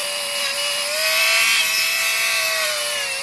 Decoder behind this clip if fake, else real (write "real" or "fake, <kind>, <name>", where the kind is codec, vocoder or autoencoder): fake, vocoder, BigVGAN v2